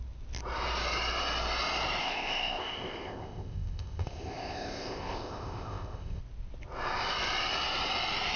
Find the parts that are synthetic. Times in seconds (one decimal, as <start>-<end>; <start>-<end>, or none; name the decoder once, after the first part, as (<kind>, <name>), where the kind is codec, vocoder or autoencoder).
2.0-6.2 (codec, ZipCodec)